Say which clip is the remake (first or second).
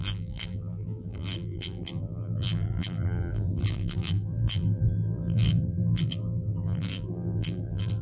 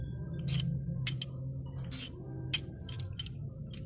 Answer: first